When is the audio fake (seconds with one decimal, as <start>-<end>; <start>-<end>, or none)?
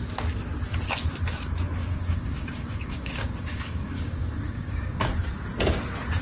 1.8-5.0